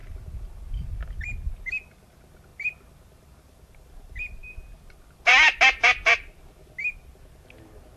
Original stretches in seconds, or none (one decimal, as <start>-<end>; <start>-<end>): 0.0-8.0